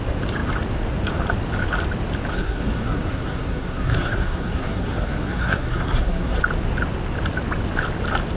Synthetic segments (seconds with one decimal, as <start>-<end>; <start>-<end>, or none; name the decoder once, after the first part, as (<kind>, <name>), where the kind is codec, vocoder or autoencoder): 2.3-6.4 (codec, SNAC)